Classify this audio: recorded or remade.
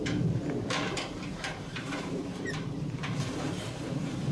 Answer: remade